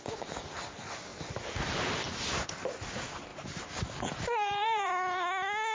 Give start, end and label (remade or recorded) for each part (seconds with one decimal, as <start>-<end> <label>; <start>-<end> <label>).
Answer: 0.0-1.1 recorded; 1.1-2.8 remade; 2.8-3.3 recorded; 3.3-4.9 remade; 4.9-5.7 recorded